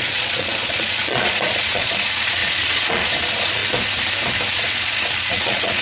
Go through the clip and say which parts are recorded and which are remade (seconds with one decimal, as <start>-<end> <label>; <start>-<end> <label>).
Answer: 0.0-3.6 remade; 3.6-4.5 recorded; 4.5-5.8 remade